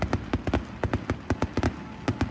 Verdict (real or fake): real